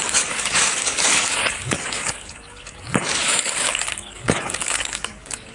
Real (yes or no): no